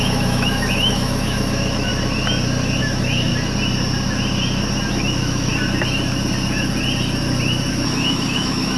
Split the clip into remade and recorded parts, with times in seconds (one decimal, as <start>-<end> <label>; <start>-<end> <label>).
0.0-1.9 remade; 1.9-2.8 recorded; 2.8-3.3 remade; 3.3-4.9 recorded; 4.9-5.5 remade; 5.5-7.7 recorded; 7.7-8.8 remade